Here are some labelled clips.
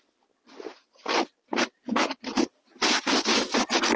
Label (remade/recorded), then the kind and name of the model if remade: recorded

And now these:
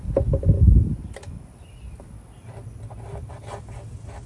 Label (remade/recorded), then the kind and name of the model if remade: recorded